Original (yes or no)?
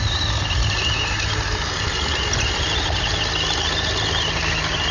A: yes